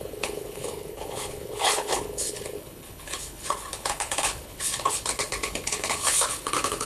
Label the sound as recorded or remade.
remade